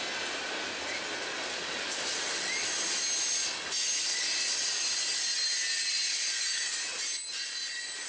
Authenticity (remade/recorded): recorded